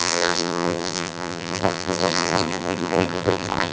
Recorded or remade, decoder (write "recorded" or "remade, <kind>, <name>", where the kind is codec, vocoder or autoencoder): remade, vocoder, BigVGAN v2